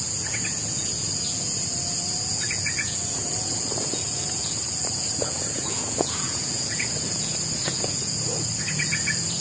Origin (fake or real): fake